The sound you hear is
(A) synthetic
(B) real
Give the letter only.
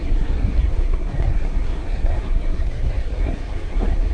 A